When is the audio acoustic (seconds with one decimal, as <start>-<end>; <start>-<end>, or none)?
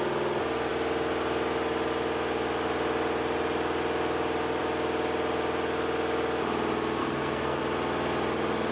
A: 0.0-7.0; 7.6-8.7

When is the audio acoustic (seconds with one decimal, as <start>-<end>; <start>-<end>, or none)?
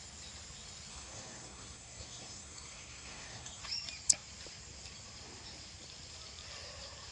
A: 0.0-0.9; 3.6-7.1